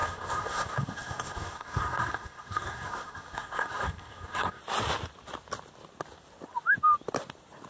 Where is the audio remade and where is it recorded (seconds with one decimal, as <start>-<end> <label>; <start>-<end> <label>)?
0.0-4.6 remade; 4.6-7.7 recorded